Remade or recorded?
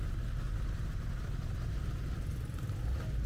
recorded